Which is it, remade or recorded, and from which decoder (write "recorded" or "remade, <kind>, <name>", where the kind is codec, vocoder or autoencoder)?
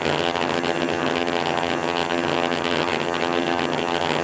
remade, vocoder, HiFi-GAN